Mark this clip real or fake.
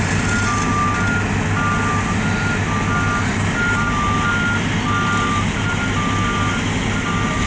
real